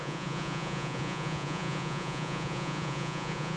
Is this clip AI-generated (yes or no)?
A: yes